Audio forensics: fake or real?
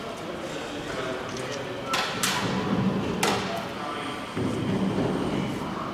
real